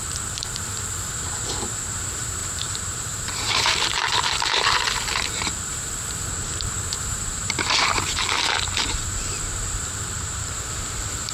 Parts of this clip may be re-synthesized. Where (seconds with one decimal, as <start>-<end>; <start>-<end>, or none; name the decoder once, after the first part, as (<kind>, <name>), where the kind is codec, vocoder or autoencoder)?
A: 0.0-11.3 (vocoder, BigVGAN v2)